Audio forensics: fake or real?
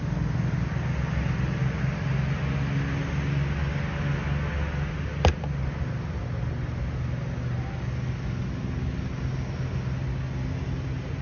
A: real